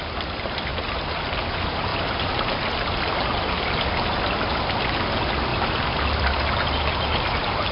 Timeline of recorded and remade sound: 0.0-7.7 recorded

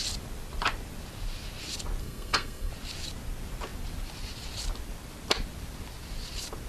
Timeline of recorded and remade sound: 0.0-2.0 recorded; 2.0-2.7 remade; 2.7-6.7 recorded

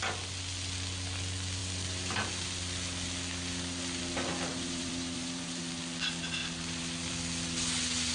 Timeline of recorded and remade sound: 0.0-4.5 recorded; 4.5-5.6 remade; 5.6-8.1 recorded

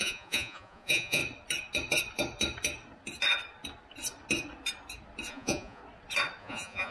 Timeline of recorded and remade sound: 0.0-1.2 remade; 1.2-5.3 recorded; 5.3-5.8 remade; 5.8-6.4 recorded; 6.4-6.9 remade

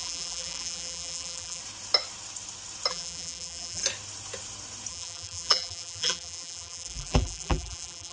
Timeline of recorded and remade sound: 0.0-1.6 remade; 1.6-2.9 recorded; 2.9-3.8 remade; 3.8-4.9 recorded; 4.9-8.1 remade

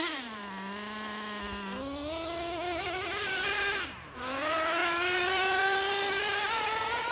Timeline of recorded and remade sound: 0.0-0.4 remade; 0.4-2.8 recorded; 2.8-7.1 remade